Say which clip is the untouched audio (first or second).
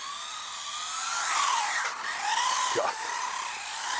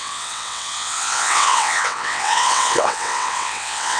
first